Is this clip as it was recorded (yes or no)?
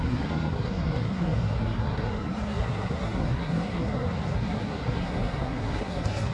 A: no